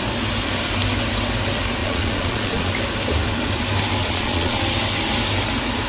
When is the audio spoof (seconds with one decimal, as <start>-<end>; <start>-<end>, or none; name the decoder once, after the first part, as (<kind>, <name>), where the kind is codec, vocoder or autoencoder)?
1.8-2.7 (vocoder, Vocos); 4.0-4.6